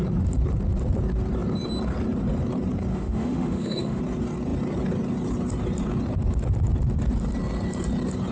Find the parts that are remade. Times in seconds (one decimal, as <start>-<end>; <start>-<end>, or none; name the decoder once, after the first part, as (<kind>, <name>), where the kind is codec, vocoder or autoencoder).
2.9-4.0 (autoencoder, DAC-VAE)